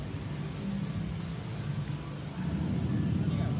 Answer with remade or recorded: recorded